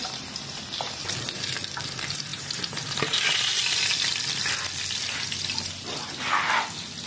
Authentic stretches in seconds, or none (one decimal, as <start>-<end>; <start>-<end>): 0.0-2.3; 3.6-7.1